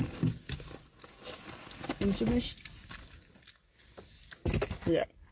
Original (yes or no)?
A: yes